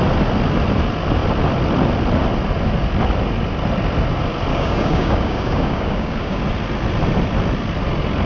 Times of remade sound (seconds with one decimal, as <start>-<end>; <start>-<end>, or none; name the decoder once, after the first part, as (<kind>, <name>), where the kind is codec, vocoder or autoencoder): 4.5-6.4 (codec, DAC)